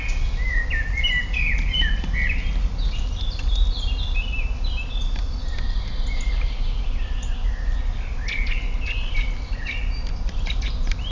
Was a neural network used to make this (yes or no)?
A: no